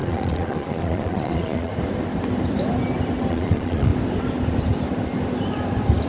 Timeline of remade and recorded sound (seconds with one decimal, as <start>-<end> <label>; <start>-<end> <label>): 0.0-1.7 remade; 1.7-3.3 recorded; 3.3-3.9 remade; 3.9-6.1 recorded